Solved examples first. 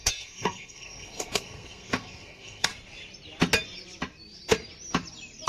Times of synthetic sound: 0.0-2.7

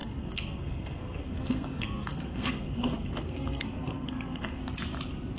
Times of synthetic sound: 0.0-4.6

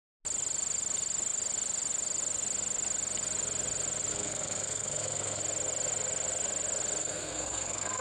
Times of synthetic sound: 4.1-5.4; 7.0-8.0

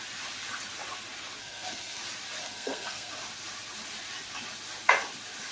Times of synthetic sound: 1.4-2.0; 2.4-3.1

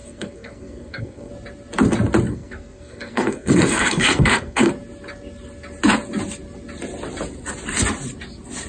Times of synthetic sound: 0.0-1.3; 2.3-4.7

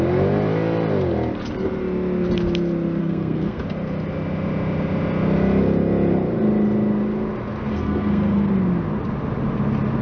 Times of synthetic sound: 3.0-3.6; 7.7-8.5

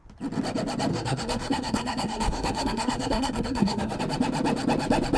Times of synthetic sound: 0.9-4.0